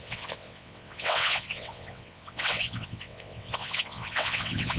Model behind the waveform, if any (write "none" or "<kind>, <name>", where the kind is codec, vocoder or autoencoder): vocoder, WaveNeXt